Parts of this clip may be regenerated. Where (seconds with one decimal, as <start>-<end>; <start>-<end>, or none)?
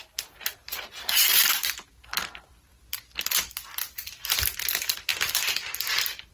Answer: 0.6-4.4